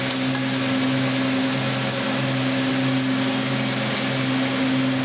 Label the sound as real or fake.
real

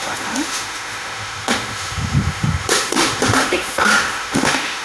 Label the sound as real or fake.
fake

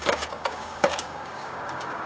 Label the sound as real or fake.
fake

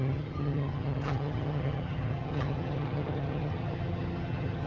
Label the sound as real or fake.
fake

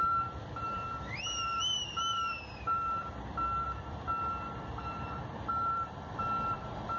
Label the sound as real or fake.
fake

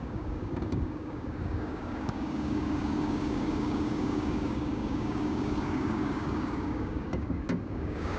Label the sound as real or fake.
fake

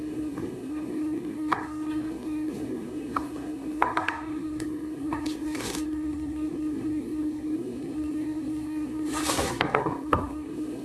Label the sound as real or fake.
fake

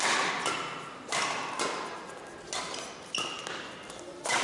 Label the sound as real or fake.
real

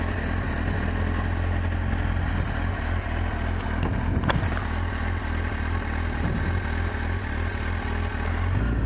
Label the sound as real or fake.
real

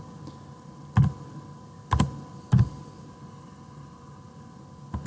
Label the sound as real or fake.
real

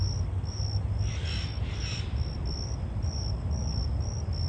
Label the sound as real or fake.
real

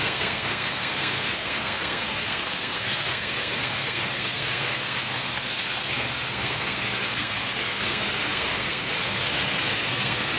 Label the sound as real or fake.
fake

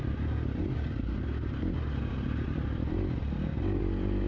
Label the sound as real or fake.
real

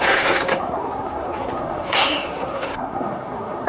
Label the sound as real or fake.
fake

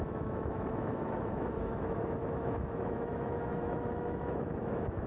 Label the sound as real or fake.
fake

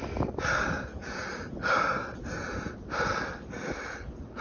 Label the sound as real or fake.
real